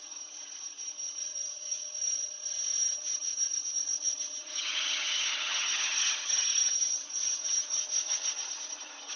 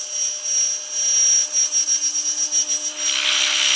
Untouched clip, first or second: second